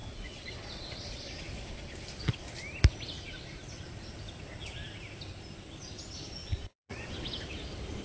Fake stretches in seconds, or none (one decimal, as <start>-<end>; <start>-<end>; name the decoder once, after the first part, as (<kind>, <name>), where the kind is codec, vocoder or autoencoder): 0.0-1.4 (vocoder, Vocos); 6.4-7.1